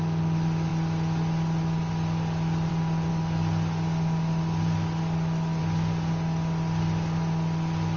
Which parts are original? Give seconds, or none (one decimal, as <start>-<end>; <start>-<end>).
0.0-8.0